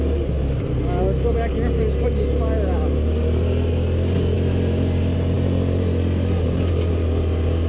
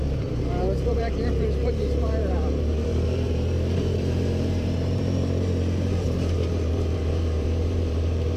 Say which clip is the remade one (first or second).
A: second